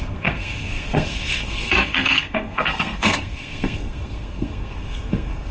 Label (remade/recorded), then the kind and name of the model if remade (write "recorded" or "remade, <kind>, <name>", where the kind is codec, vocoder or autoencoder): remade, codec, SNAC